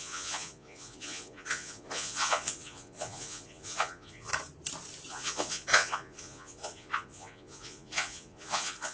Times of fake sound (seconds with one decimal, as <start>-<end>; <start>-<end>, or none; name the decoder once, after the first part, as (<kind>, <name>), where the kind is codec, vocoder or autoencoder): 0.0-4.3 (vocoder, Vocos); 5.1-8.9